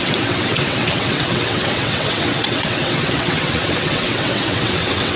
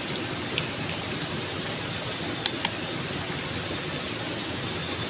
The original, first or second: second